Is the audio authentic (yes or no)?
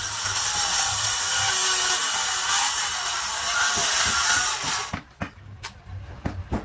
yes